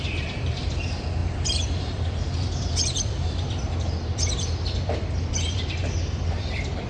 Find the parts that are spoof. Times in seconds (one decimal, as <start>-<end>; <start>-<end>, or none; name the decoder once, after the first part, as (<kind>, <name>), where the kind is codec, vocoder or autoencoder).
0.0-6.9 (vocoder, BigVGAN v2)